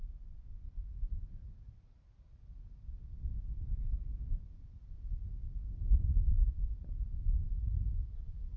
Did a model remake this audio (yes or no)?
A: no